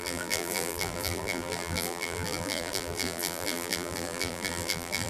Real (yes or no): no